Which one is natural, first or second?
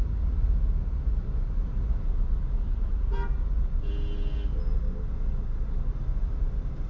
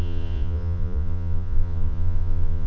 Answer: first